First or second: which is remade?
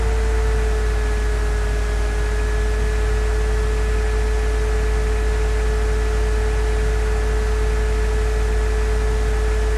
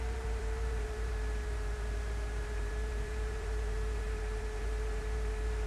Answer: second